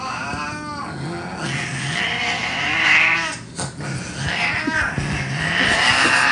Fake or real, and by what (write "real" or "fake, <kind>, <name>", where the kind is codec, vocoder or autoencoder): real